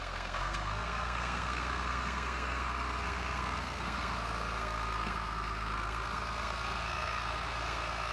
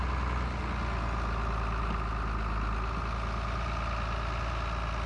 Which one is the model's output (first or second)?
first